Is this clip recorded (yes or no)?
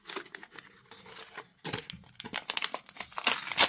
yes